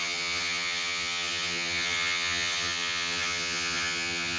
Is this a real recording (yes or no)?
no